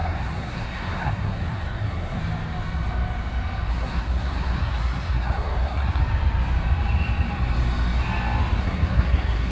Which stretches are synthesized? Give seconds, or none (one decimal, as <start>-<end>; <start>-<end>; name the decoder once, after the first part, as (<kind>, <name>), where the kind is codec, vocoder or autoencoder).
0.0-2.2 (codec, SNAC); 3.7-6.0; 8.6-9.5